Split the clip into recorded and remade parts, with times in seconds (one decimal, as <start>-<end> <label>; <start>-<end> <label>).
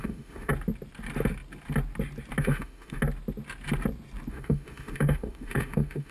0.0-0.5 remade; 0.5-2.4 recorded; 2.4-3.0 remade; 3.0-4.3 recorded; 4.3-6.1 remade